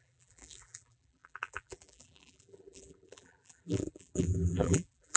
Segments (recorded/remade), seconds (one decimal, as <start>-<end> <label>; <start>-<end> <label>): 0.0-5.2 remade